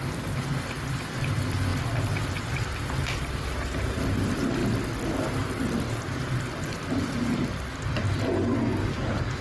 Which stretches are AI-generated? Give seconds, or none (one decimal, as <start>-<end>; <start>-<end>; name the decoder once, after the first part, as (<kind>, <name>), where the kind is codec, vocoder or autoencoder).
0.0-1.7 (vocoder, BigVGAN v2); 2.4-4.6; 6.3-8.0; 8.8-9.4